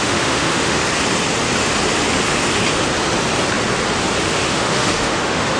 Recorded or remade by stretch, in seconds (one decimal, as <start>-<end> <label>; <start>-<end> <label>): 0.0-0.8 remade; 0.8-4.2 recorded; 4.2-5.6 remade